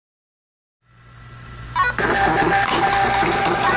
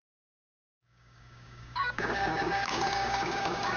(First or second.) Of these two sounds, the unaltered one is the first